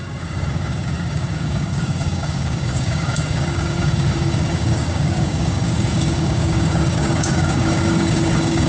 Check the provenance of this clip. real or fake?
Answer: fake